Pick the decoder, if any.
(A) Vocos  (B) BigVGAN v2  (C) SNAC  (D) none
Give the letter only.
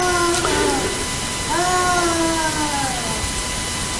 D